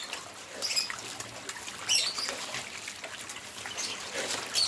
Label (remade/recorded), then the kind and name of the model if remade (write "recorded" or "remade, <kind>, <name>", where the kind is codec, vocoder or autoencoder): recorded